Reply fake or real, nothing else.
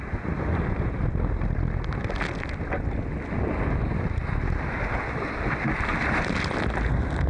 real